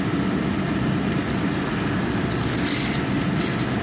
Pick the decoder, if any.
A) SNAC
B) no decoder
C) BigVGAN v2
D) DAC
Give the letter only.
B